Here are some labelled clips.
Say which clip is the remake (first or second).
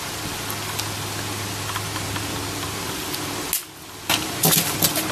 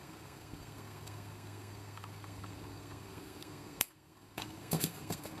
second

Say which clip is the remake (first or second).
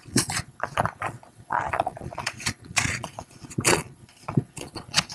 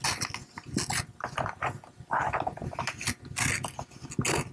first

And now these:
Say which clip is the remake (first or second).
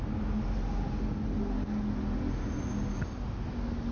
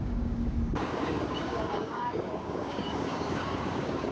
second